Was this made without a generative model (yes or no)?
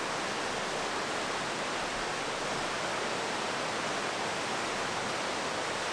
yes